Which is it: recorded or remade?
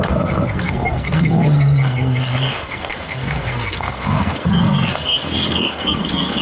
remade